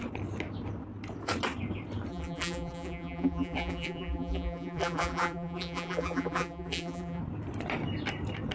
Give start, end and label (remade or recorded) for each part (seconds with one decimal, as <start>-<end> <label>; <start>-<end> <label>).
0.0-2.1 recorded; 2.1-7.2 remade; 7.2-8.5 recorded